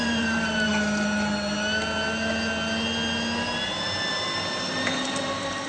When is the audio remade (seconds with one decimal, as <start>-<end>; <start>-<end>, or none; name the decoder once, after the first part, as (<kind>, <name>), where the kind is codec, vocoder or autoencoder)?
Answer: 0.0-0.7 (vocoder, BigVGAN v2); 4.1-5.7